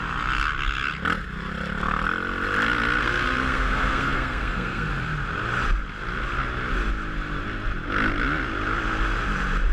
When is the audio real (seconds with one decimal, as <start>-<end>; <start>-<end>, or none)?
0.0-3.0; 4.9-9.7